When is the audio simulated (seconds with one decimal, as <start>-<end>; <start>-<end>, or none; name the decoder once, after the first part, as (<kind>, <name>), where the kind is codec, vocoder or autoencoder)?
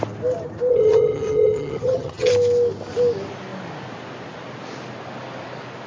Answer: 0.7-2.3 (vocoder, HiFi-GAN)